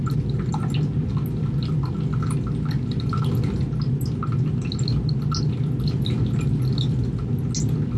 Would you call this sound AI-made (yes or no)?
no